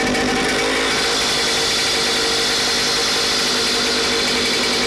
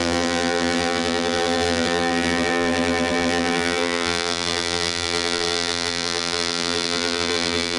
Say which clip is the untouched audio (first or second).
first